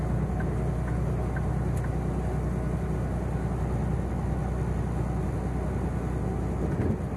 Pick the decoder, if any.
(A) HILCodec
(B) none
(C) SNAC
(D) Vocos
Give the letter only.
B